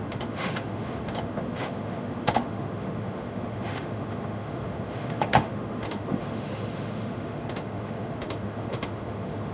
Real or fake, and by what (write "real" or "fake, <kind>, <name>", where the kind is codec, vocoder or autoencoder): fake, autoencoder, DAC-VAE